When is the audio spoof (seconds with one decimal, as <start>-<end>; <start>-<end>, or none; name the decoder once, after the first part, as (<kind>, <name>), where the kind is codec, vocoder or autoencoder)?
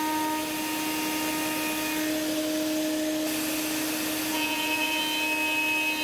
4.3-5.0 (vocoder, Vocos)